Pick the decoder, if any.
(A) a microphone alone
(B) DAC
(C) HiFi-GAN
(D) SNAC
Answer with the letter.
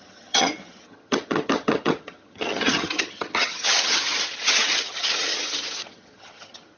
C